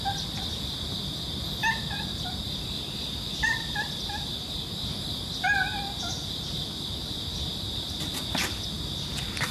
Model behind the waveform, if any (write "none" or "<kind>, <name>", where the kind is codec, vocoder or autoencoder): none